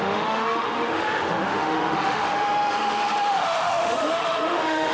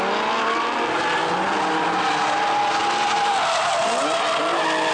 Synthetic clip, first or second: first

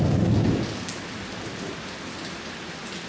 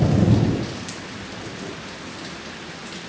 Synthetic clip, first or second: second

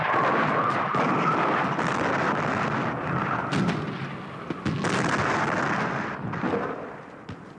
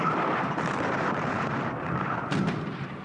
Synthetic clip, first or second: second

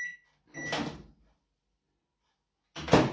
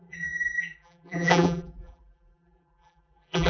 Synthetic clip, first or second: second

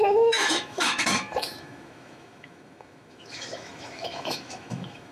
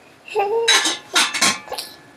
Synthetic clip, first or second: first